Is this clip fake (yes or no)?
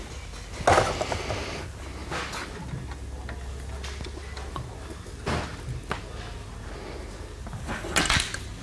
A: no